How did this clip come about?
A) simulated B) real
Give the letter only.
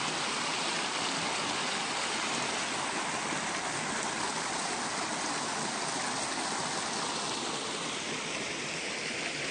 B